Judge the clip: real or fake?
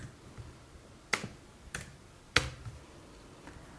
real